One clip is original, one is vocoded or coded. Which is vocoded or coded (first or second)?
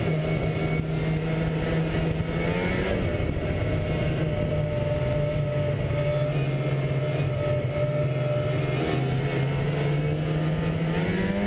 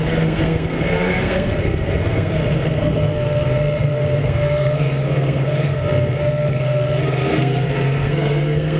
second